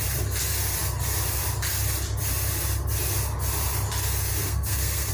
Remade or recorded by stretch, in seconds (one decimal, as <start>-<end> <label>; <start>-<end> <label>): 0.0-4.4 recorded; 4.4-5.1 remade